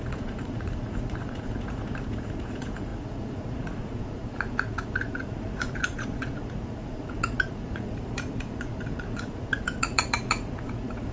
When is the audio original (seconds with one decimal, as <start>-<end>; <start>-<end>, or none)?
none